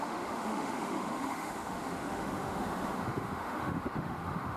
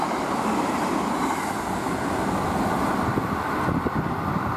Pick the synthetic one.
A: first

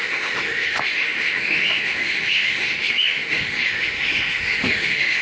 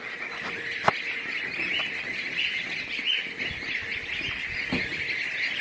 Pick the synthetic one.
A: first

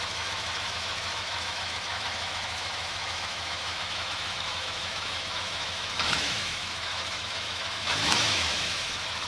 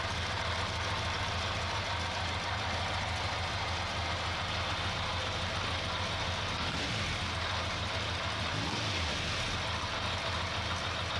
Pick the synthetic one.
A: first